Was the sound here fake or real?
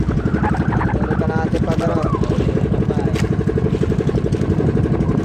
real